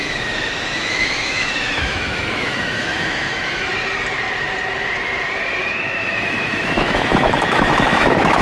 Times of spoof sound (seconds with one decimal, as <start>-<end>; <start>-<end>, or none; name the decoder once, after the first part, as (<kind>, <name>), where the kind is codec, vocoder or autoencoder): 0.0-3.7 (autoencoder, DAC-VAE); 5.6-8.4